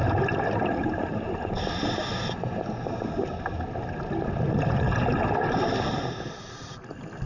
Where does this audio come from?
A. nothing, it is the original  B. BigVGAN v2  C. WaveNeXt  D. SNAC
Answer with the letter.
A